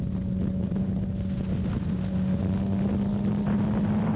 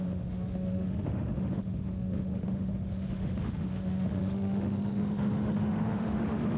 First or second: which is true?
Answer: first